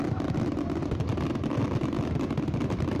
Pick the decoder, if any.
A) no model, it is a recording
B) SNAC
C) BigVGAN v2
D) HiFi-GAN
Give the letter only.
A